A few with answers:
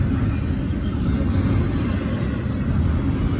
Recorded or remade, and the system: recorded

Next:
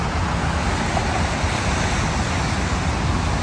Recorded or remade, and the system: recorded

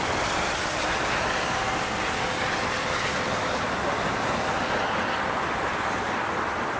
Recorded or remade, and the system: recorded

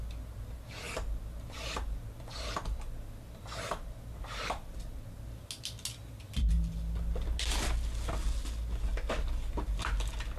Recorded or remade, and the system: recorded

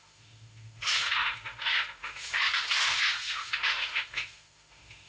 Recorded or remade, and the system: remade, autoencoder, DAC-VAE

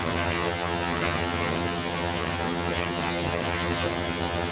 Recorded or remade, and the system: remade, vocoder, HiFi-GAN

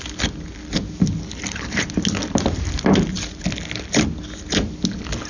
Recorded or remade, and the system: recorded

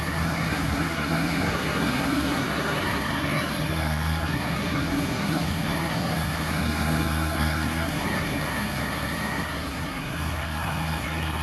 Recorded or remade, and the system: remade, codec, SNAC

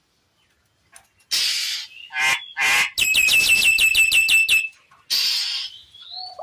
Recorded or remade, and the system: recorded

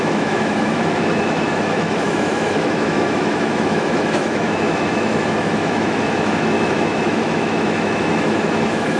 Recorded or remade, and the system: remade, autoencoder, DAC-VAE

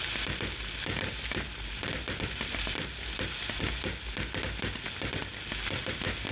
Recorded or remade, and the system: recorded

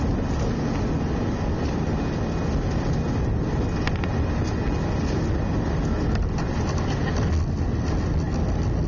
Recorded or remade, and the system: recorded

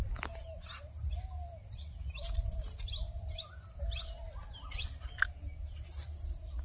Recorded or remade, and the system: recorded